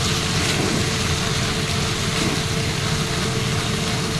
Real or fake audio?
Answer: real